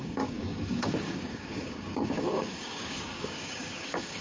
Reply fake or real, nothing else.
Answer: fake